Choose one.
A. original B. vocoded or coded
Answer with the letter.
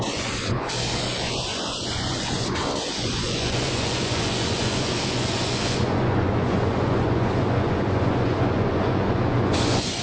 B